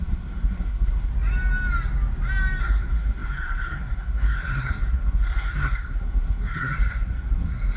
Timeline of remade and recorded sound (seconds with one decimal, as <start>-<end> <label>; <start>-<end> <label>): 0.0-1.1 remade; 1.1-2.6 recorded; 2.6-7.8 remade